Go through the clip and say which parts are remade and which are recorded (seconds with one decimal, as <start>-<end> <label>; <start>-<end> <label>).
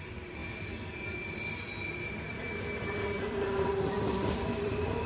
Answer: 0.0-0.4 remade; 0.4-3.2 recorded; 3.2-5.1 remade